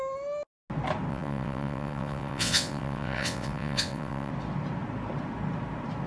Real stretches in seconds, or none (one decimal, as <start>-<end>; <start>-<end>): 0.0-1.1; 4.3-6.1